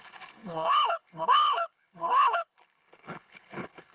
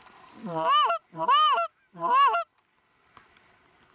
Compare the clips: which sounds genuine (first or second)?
second